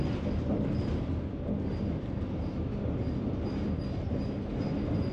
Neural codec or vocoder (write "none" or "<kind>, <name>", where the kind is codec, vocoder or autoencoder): none